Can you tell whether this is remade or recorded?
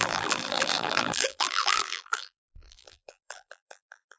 remade